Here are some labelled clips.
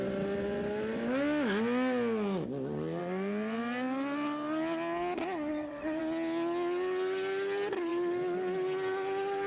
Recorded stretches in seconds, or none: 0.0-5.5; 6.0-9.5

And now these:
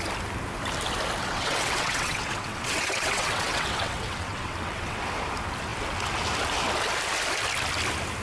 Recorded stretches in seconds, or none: 0.0-1.2; 5.0-8.2